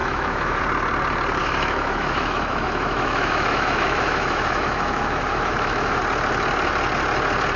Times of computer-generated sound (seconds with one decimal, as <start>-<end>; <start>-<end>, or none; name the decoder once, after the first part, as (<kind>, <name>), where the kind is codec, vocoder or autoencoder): 0.0-0.6 (autoencoder, DAC-VAE); 1.4-6.0